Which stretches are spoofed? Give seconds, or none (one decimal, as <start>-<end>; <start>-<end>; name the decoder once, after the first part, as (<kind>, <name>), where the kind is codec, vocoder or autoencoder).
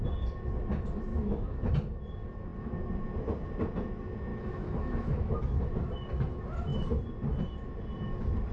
1.1-1.7 (autoencoder, DAC-VAE); 4.3-5.6